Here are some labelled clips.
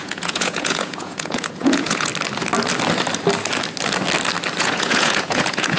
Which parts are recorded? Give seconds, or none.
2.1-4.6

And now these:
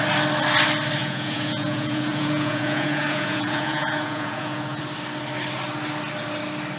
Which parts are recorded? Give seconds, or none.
0.0-1.0; 4.8-6.8

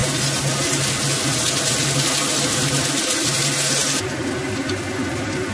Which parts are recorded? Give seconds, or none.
0.0-5.5

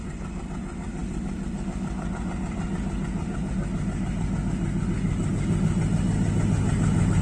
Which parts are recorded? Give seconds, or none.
0.0-7.2

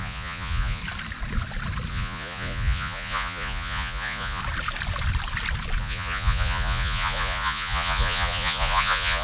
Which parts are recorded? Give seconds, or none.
0.8-1.9; 4.4-5.8

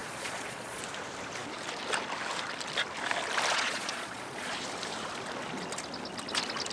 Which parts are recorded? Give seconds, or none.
0.8-3.5; 4.5-6.7

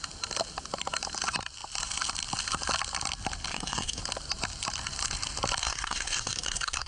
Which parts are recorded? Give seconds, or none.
0.0-3.5; 4.0-5.6